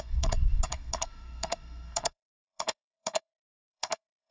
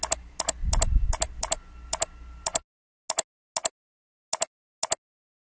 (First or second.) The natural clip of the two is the second